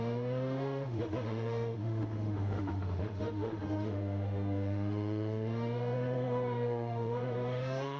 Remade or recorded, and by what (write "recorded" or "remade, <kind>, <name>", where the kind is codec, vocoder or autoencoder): remade, autoencoder, DAC-VAE